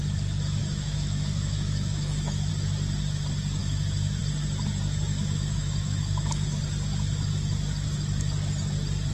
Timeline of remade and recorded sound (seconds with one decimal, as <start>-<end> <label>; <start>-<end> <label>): 0.0-0.6 recorded; 0.6-2.5 remade; 2.5-3.6 recorded; 3.6-4.2 remade; 4.2-5.1 recorded; 5.1-6.6 remade; 6.6-9.1 recorded